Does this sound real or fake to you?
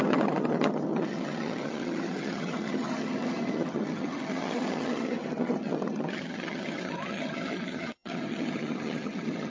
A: fake